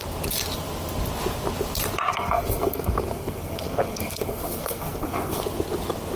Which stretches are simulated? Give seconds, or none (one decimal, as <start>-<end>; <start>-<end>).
2.1-5.4